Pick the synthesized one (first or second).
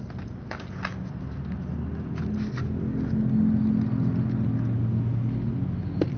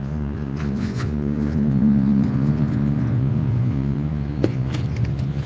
second